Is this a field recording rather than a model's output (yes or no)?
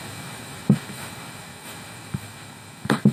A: no